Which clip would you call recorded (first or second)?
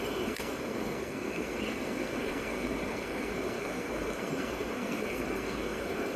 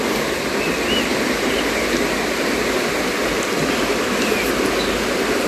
second